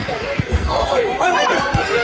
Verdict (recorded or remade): remade